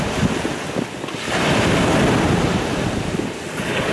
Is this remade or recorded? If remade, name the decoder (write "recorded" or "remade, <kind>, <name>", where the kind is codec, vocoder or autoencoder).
recorded